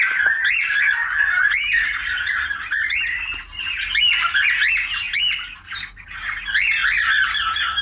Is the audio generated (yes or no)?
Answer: no